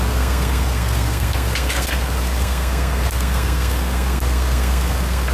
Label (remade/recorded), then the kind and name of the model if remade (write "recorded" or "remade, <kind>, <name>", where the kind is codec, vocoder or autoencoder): remade, codec, SNAC